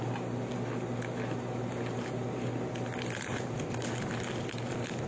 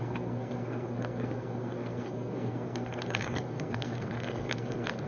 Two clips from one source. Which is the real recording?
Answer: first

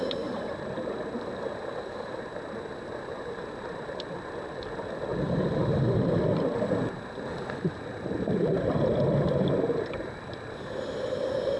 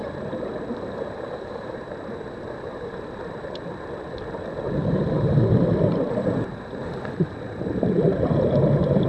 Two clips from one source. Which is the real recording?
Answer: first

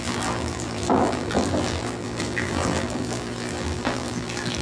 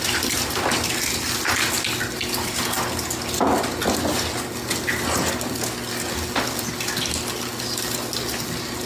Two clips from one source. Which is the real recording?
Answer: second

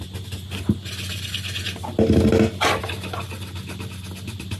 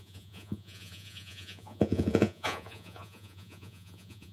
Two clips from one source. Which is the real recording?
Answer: first